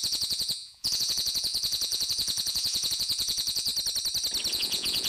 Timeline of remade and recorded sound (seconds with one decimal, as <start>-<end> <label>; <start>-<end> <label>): 0.0-3.7 remade; 3.7-4.5 recorded; 4.5-5.1 remade